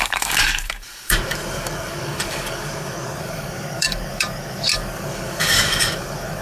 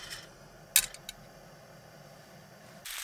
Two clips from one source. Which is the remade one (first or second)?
first